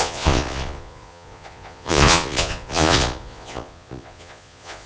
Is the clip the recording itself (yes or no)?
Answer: no